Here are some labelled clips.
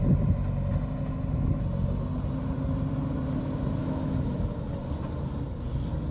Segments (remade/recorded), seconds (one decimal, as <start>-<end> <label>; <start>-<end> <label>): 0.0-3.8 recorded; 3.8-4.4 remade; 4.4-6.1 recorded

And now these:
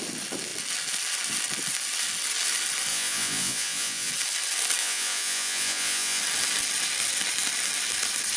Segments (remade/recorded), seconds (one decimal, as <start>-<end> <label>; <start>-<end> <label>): 0.0-2.9 recorded; 2.9-4.1 remade; 4.1-4.8 recorded; 4.8-6.2 remade; 6.2-8.4 recorded

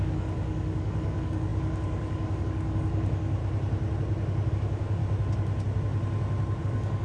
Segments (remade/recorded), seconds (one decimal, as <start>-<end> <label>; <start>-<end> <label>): 0.0-3.4 remade; 3.4-4.5 recorded; 4.5-5.0 remade; 5.0-6.6 recorded; 6.6-7.0 remade

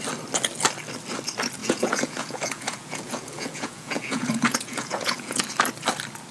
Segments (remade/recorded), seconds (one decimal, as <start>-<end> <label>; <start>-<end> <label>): 0.0-1.6 recorded; 1.6-5.4 remade; 5.4-6.3 recorded

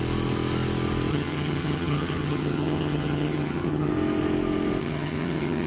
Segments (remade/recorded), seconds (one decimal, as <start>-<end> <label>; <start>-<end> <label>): 0.0-1.1 recorded; 1.1-3.9 remade; 3.9-4.8 recorded; 4.8-5.7 remade

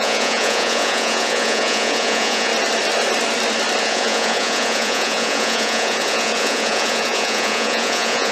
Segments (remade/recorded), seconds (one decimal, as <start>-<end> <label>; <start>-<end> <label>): 0.0-2.5 remade; 2.5-3.8 recorded; 3.8-8.3 remade